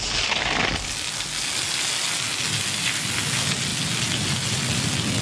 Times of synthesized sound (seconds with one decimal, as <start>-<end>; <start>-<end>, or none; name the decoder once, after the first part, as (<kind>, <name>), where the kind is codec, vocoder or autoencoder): none